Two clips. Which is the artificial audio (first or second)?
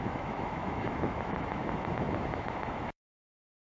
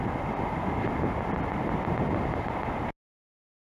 first